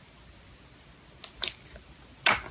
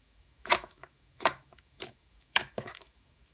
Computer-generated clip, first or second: second